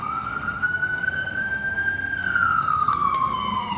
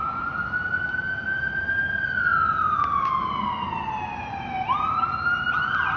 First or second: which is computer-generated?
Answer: first